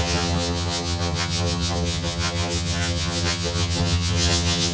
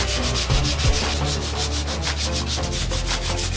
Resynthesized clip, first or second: first